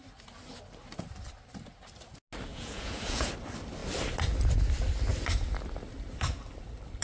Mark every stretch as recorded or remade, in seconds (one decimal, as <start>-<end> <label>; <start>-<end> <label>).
0.0-2.5 recorded; 2.5-3.3 remade; 3.3-7.0 recorded